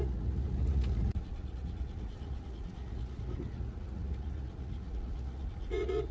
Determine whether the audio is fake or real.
fake